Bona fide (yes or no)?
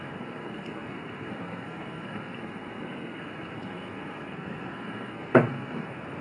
no